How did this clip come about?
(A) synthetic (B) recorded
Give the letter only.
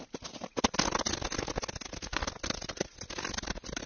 B